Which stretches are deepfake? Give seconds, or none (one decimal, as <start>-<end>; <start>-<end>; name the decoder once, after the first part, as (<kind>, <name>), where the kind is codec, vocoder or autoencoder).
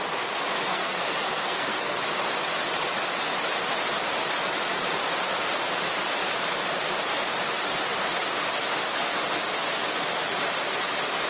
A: 0.7-2.0 (codec, SNAC)